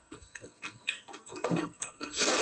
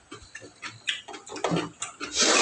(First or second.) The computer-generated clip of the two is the first